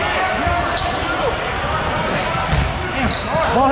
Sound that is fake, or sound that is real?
real